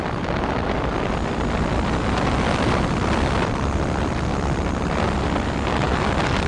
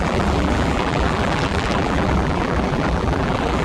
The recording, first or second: first